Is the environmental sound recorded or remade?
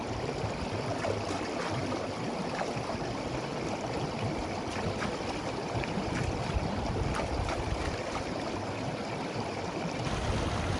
recorded